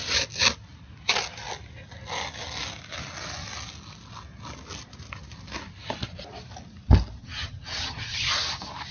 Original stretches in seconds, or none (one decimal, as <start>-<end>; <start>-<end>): 0.0-7.2; 8.3-8.9